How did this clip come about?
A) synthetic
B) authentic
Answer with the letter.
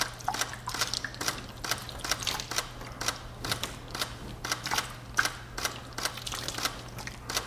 B